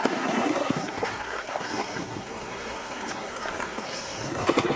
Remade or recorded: remade